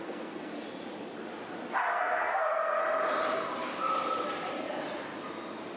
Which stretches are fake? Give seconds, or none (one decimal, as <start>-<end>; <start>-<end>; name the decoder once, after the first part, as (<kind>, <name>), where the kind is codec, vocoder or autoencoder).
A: 0.0-0.5 (codec, SNAC); 1.7-2.8